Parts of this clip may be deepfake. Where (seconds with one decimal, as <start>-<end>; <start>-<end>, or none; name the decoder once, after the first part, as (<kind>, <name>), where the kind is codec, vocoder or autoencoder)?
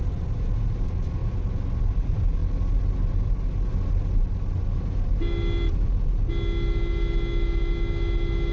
none